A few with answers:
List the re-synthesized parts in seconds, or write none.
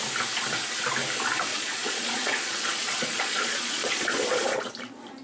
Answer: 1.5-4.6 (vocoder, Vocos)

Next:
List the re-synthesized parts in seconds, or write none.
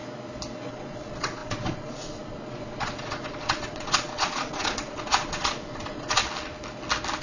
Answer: 0.7-6.2 (vocoder, Vocos)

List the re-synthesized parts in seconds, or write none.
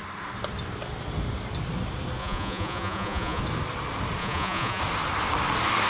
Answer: 2.2-3.4 (vocoder, Vocos); 4.2-4.8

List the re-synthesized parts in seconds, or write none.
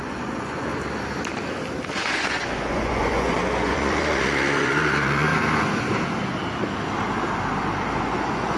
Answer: 0.0-0.7 (vocoder, Vocos); 1.9-5.3; 7.9-8.6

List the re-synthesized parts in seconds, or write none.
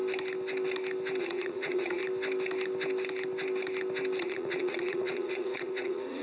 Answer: 1.2-2.0 (vocoder, Vocos); 4.2-6.2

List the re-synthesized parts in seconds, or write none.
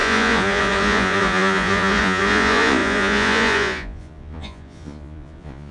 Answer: 0.0-5.7 (vocoder, Vocos)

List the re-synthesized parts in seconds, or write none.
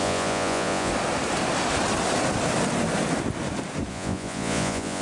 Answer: 0.0-0.9 (vocoder, Vocos); 3.9-5.0